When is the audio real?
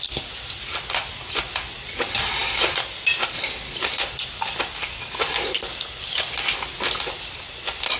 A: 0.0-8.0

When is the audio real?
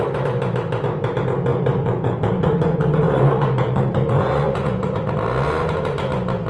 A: 0.0-1.5; 5.0-6.5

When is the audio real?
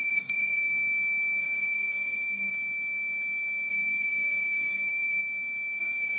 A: 0.7-1.4; 2.5-3.7; 5.2-5.8